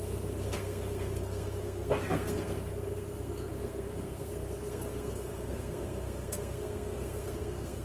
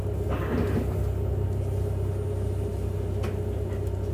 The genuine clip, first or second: second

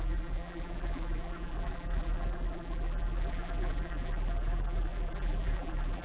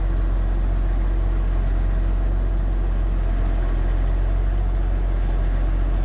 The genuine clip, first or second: second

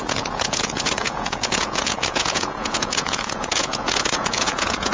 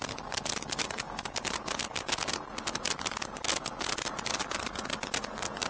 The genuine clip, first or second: second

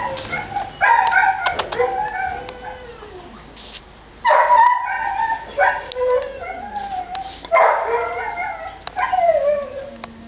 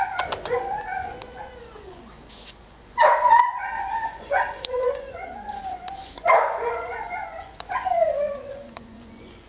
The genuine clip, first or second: first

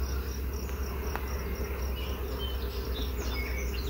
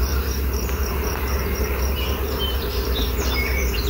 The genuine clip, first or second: first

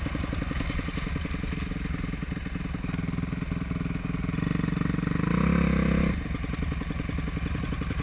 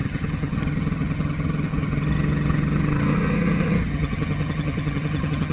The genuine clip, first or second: first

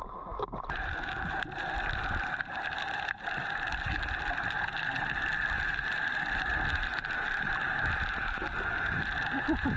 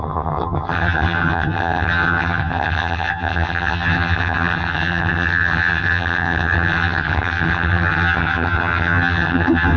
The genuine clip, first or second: first